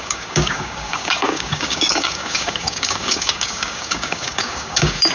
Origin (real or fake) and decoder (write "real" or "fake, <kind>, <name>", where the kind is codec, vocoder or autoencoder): fake, codec, DAC